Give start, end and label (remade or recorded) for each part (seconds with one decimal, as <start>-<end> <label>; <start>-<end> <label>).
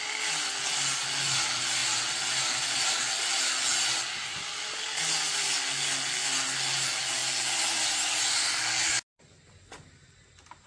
0.0-10.7 recorded